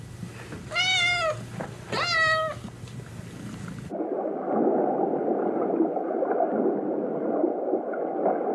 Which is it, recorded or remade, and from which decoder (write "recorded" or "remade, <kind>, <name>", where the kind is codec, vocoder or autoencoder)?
recorded